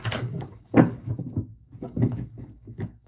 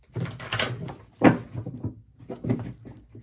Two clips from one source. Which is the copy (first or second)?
first